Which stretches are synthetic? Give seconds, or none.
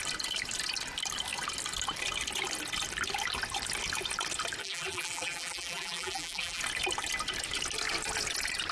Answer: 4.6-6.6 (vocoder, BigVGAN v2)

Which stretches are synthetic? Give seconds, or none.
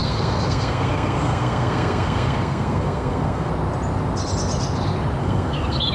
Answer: 0.0-3.5 (codec, SNAC); 5.2-5.9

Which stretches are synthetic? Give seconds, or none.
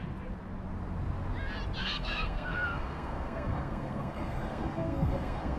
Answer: 1.8-5.6 (codec, SNAC)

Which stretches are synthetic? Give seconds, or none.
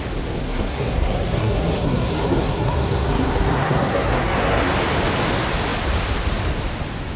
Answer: 0.4-4.7 (codec, SNAC)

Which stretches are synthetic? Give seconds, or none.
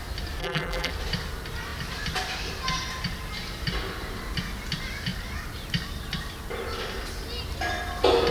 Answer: 0.4-0.9 (vocoder, BigVGAN v2)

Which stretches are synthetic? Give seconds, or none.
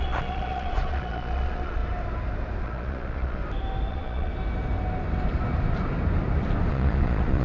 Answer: 0.0-1.8 (vocoder, Vocos); 2.6-3.4; 3.9-4.3; 6.7-7.4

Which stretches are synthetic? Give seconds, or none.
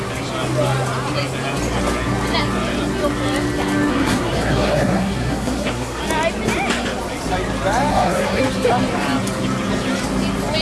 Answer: 3.9-6.0 (codec, SNAC); 7.9-8.4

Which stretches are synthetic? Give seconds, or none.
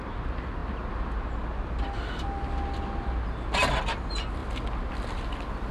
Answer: none